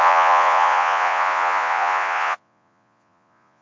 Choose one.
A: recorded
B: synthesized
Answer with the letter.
B